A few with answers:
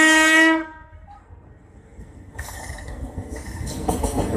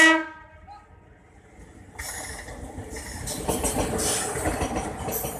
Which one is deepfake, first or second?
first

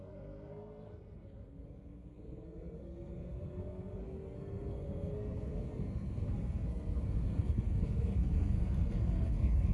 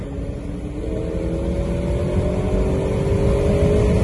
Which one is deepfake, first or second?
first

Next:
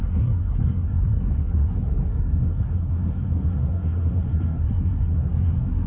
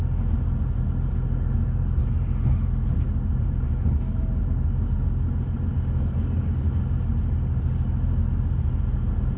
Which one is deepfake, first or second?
first